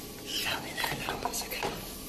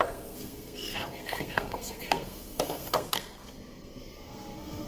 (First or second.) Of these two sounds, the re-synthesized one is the second